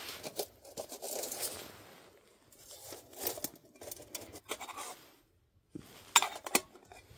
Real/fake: real